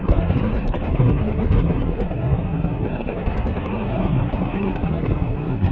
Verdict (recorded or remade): remade